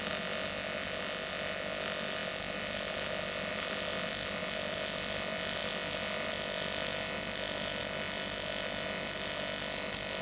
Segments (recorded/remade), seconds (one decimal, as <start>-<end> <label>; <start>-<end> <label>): 0.0-10.2 recorded